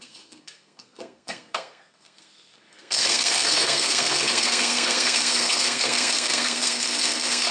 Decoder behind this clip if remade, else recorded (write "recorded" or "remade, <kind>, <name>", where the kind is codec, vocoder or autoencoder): remade, codec, SNAC